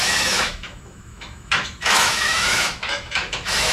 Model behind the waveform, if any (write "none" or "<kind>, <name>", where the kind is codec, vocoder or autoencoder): autoencoder, DAC-VAE